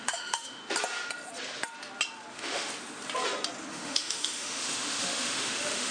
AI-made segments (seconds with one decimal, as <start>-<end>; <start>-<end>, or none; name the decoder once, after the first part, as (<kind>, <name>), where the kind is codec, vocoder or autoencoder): 0.0-0.6 (autoencoder, DAC-VAE); 2.3-2.7; 3.7-5.9